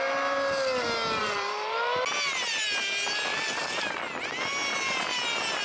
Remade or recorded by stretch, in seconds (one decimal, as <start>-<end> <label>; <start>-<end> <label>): 0.0-1.2 recorded; 1.2-2.0 remade; 2.0-4.7 recorded; 4.7-5.6 remade